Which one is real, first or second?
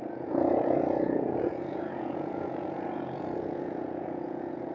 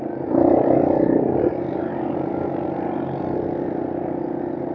second